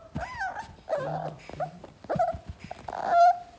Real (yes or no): yes